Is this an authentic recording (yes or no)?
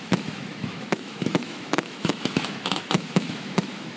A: no